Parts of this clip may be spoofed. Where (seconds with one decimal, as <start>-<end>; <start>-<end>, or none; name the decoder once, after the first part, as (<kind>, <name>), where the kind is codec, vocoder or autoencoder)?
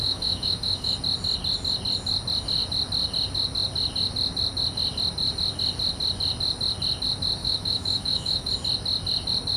0.0-0.9 (autoencoder, DAC-VAE); 7.4-8.5